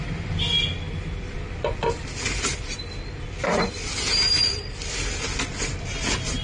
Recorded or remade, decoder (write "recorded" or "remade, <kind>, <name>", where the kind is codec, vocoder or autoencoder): recorded